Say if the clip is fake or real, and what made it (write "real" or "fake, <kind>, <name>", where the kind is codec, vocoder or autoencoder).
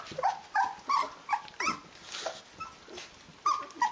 real